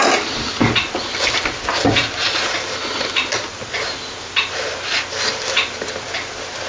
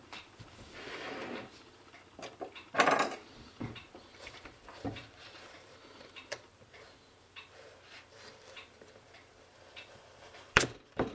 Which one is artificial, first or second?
second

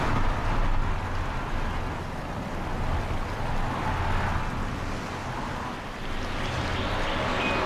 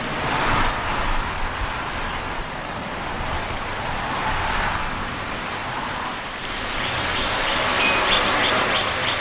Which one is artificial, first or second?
second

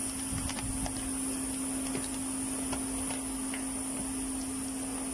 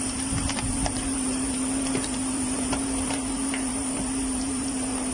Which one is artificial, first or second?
second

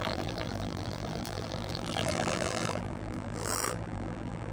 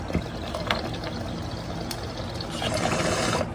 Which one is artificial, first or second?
first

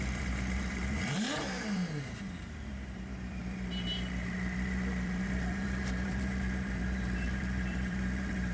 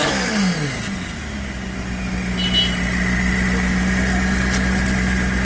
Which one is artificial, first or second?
first